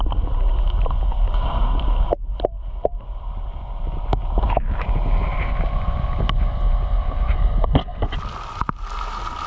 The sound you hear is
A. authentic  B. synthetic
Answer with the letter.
A